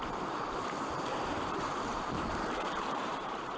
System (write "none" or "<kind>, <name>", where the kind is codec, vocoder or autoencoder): vocoder, BigVGAN v2